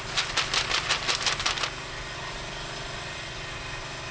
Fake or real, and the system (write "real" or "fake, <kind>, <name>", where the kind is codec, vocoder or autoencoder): real